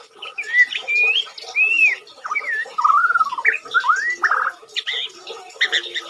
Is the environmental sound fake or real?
real